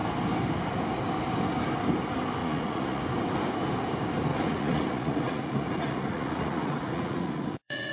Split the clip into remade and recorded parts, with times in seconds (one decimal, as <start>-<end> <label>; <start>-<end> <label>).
0.0-2.4 recorded; 2.4-3.0 remade; 3.0-4.3 recorded; 4.3-7.9 remade

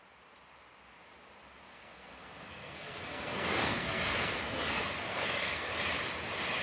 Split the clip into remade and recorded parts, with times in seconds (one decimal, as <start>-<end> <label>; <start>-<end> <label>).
0.0-1.7 recorded; 1.7-5.7 remade; 5.7-6.6 recorded

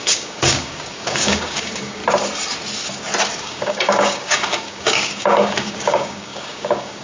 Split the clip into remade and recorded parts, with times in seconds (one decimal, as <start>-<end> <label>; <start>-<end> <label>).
0.0-2.0 remade; 2.0-3.4 recorded; 3.4-7.0 remade

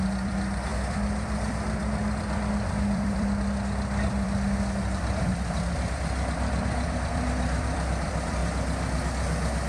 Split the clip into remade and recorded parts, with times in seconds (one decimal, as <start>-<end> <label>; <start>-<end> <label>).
0.0-8.4 remade; 8.4-9.7 recorded